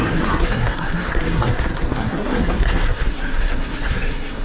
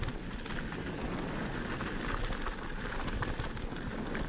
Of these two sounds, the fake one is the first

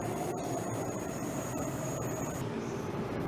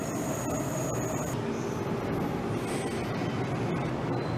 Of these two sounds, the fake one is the first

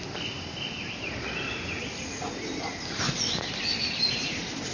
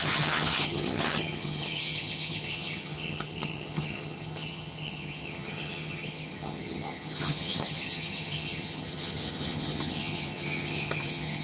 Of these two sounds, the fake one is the second